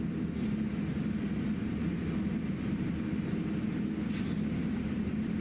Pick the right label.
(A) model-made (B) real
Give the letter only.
B